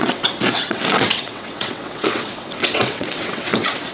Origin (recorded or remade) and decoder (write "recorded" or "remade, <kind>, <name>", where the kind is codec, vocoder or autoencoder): remade, vocoder, WaveNeXt